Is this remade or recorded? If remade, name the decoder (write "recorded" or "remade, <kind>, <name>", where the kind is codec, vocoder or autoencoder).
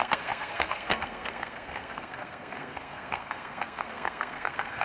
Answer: remade, codec, SNAC